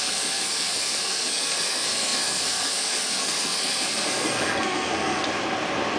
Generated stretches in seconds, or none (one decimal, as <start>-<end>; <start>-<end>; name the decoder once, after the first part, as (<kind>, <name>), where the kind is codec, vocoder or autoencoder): 0.0-5.2 (codec, SNAC)